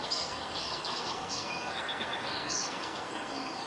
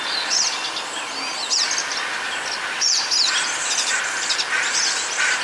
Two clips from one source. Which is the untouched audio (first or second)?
second